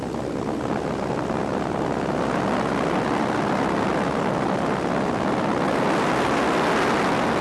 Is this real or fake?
real